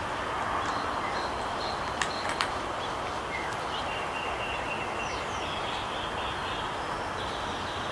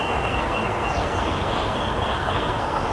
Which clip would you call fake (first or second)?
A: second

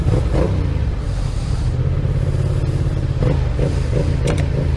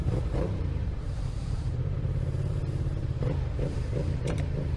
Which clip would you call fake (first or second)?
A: second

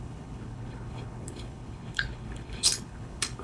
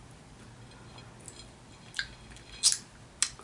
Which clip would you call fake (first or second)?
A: first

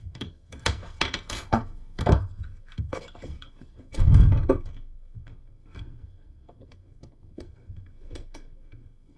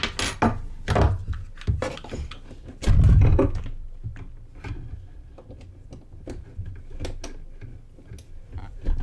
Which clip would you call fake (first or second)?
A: first